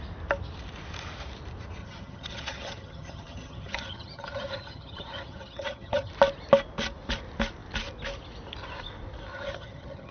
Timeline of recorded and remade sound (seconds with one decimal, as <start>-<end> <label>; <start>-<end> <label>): 0.0-1.8 recorded; 1.8-6.1 remade; 6.1-9.3 recorded; 9.3-10.1 remade